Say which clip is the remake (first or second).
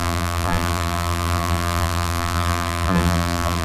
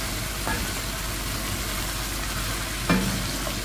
first